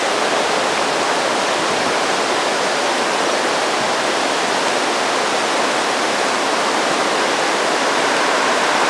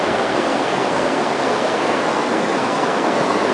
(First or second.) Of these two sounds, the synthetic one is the second